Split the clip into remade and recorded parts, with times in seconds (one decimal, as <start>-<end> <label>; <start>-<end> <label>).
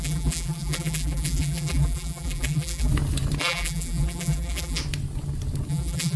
0.0-2.9 remade; 2.9-3.4 recorded; 3.4-4.8 remade; 4.8-5.7 recorded; 5.7-6.2 remade